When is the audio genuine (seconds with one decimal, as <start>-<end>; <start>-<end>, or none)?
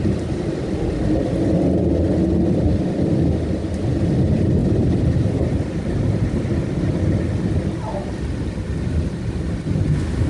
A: 0.0-10.3